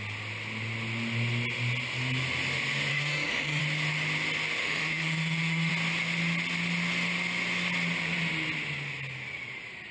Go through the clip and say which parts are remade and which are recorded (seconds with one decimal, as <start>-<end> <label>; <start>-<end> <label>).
0.0-2.9 recorded; 2.9-3.6 remade; 3.6-4.6 recorded; 4.6-5.7 remade; 5.7-9.9 recorded